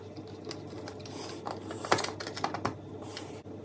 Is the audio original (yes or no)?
yes